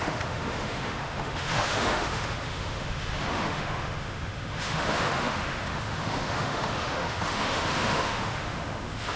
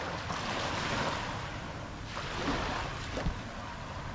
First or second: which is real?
second